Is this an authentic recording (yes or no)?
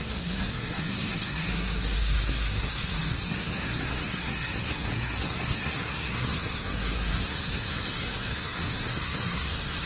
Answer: no